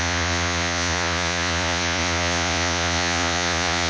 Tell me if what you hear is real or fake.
fake